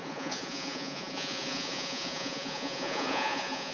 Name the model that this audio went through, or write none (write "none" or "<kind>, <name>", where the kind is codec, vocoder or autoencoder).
vocoder, Vocos